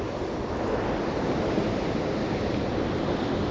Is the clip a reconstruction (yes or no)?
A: no